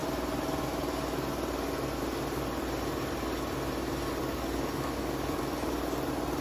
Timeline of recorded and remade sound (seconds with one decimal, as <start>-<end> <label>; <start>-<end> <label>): 0.0-4.2 recorded; 4.2-5.4 remade; 5.4-6.4 recorded